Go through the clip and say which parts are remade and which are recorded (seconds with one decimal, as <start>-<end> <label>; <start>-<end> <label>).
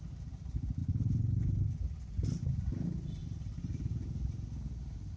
0.0-3.2 recorded; 3.2-3.7 remade; 3.7-5.2 recorded